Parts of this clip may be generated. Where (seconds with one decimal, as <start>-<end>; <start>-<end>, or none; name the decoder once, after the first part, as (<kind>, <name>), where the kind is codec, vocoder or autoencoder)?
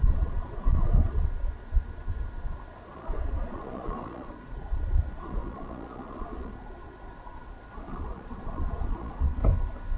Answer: 0.0-9.4 (vocoder, Vocos)